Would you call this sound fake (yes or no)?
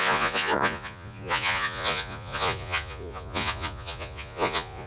yes